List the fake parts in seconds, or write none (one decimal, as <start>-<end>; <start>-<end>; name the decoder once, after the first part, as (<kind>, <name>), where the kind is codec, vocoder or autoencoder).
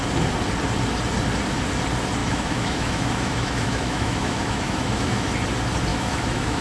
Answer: 2.2-5.3 (autoencoder, DAC-VAE); 5.9-6.6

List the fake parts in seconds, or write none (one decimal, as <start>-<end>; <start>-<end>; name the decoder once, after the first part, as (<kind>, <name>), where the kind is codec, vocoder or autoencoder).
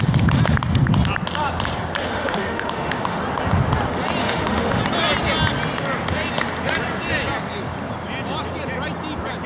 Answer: 2.0-3.2 (autoencoder, DAC-VAE); 4.2-4.8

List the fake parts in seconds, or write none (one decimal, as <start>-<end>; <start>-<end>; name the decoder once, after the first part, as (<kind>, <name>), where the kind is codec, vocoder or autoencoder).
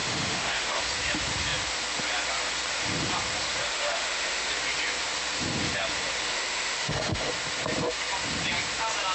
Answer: 0.0-0.8 (autoencoder, DAC-VAE); 3.7-4.5; 6.3-7.3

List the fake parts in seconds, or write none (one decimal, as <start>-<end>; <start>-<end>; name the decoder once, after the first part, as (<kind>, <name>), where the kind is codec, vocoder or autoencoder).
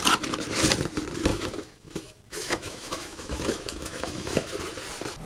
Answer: 1.3-4.5 (autoencoder, DAC-VAE)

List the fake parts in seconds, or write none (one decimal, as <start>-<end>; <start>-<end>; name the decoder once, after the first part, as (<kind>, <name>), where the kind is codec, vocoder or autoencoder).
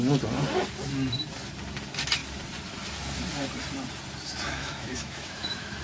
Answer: 4.6-5.8 (autoencoder, DAC-VAE)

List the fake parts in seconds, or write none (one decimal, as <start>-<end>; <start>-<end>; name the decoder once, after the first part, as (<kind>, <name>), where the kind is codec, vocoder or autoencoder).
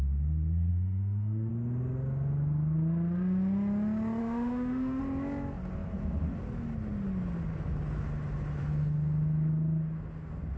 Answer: 0.7-1.5 (autoencoder, DAC-VAE); 4.2-5.0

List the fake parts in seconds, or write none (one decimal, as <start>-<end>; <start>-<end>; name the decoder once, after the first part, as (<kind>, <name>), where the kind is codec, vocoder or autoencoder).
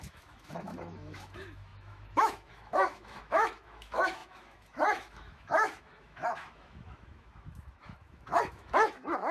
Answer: 0.0-9.3 (autoencoder, DAC-VAE)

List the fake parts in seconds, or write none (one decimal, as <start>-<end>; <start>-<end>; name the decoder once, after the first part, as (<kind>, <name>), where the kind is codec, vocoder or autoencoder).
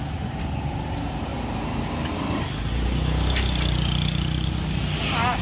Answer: none